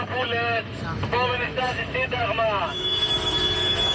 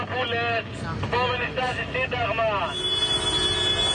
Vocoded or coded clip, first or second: first